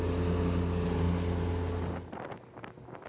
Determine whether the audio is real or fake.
real